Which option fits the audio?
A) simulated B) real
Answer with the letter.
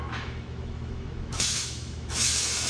A